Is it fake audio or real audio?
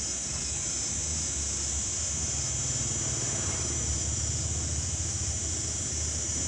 real